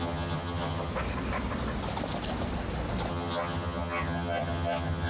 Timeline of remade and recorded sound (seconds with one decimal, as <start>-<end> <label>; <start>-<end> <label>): 0.0-0.9 remade; 0.9-3.1 recorded; 3.1-5.1 remade